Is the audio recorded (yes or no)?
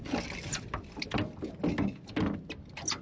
yes